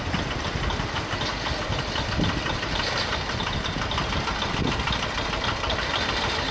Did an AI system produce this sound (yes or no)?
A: no